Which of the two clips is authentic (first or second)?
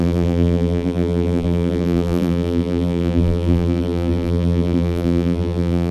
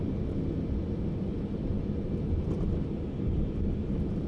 second